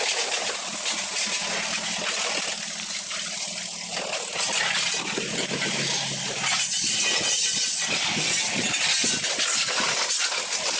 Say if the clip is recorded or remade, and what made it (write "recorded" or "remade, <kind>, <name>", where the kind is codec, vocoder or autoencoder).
recorded